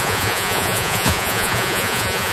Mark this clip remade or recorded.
remade